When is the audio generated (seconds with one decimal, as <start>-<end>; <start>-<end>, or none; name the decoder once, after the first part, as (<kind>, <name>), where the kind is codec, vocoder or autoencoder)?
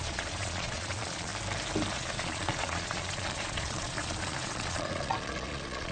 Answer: 0.0-1.3 (vocoder, Vocos); 1.9-5.9